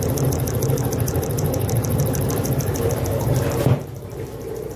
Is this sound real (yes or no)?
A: no